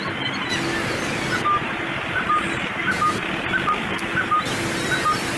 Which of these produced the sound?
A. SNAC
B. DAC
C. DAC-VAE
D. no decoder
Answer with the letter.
D